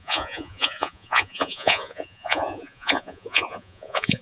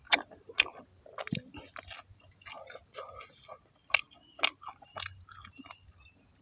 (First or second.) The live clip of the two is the second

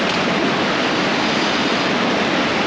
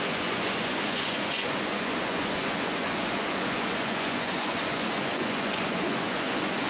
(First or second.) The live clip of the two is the first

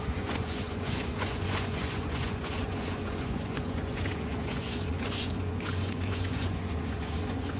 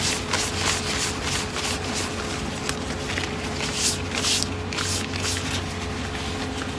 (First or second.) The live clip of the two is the second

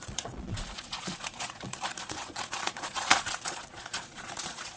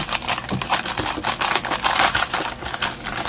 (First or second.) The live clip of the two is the second